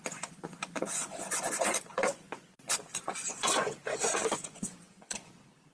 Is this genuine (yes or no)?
no